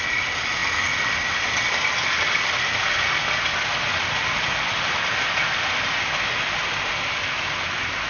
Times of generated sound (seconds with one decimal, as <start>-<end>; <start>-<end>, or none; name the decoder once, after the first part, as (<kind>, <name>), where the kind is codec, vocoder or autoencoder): none

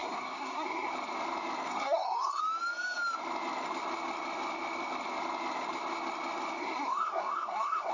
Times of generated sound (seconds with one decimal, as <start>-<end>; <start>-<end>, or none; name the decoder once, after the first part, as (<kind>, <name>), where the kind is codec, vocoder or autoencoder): 0.0-0.9 (codec, SNAC); 1.7-2.4; 6.6-7.9